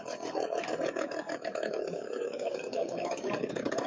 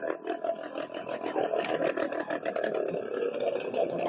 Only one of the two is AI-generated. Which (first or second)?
first